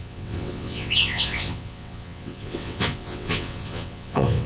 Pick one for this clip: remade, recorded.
remade